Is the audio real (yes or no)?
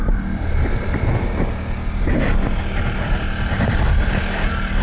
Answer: yes